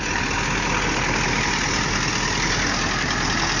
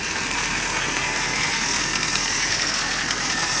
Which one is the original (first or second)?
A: first